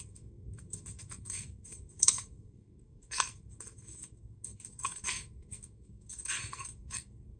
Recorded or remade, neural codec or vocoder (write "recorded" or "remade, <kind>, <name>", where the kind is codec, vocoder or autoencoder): remade, codec, SNAC